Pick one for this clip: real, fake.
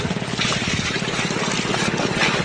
real